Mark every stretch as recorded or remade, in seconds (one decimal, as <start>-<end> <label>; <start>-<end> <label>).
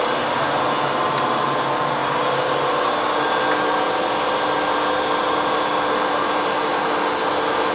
0.0-7.7 recorded